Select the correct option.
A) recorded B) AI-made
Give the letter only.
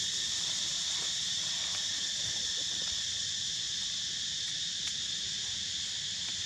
A